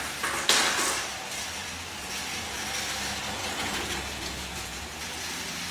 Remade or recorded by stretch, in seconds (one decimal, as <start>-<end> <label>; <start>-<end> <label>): 0.0-3.4 recorded; 3.4-5.0 remade; 5.0-5.7 recorded